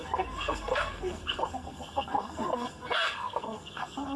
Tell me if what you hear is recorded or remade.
remade